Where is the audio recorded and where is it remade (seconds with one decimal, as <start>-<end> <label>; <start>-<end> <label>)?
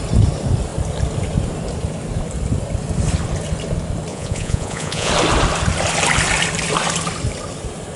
0.0-4.1 recorded; 4.1-5.1 remade; 5.1-8.0 recorded